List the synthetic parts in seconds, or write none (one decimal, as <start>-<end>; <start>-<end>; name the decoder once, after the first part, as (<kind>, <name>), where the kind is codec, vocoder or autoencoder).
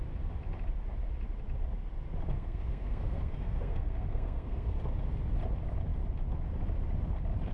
2.3-4.8 (codec, SNAC)